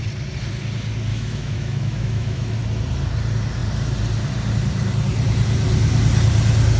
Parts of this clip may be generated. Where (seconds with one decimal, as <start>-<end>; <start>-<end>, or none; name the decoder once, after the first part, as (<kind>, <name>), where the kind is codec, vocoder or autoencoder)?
1.1-2.6 (autoencoder, DAC-VAE)